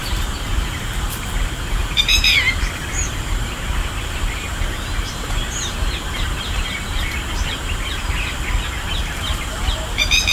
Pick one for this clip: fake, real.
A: fake